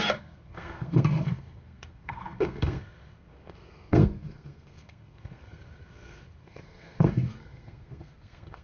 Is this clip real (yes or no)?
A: no